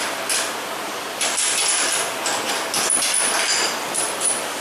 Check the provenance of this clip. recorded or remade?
recorded